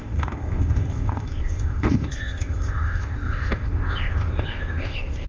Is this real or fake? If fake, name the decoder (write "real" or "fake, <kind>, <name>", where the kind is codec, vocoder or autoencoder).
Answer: fake, codec, ZipCodec